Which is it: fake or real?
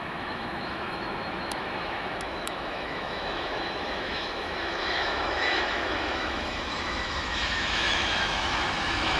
fake